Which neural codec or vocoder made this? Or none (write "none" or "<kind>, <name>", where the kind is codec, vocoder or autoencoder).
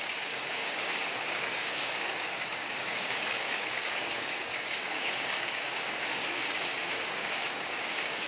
codec, DAC